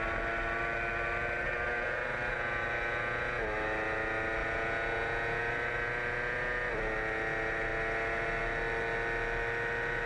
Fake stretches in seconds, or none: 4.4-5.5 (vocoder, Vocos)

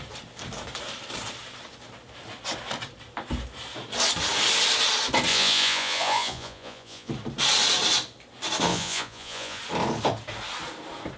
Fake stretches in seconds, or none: 5.3-7.1 (vocoder, Vocos); 8.7-9.6

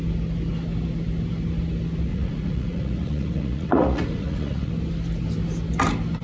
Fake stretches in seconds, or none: 2.1-4.7 (vocoder, Vocos)

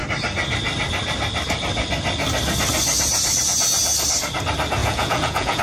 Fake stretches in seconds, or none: 4.8-5.6 (vocoder, Vocos)

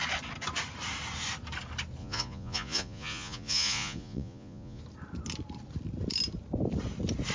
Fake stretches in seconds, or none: 2.0-4.8 (vocoder, Vocos)